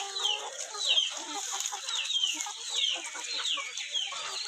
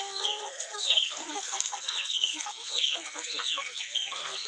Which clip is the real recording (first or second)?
first